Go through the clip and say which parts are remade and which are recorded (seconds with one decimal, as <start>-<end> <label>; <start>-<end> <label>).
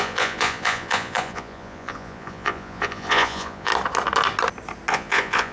0.0-3.7 remade; 3.7-4.9 recorded; 4.9-5.5 remade